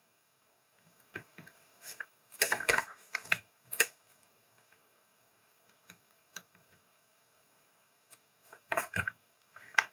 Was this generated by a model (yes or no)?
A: yes